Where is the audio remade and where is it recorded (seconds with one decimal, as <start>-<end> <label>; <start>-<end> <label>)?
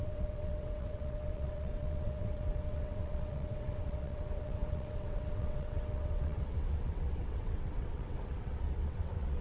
0.0-9.4 remade